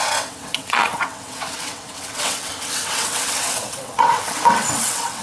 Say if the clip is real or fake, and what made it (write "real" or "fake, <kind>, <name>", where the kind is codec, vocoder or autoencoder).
fake, vocoder, WaveNeXt